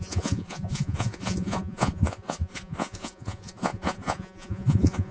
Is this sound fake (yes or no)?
yes